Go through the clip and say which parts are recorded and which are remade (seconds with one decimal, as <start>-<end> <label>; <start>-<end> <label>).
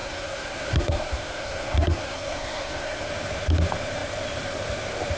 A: 0.0-3.1 remade; 3.1-5.2 recorded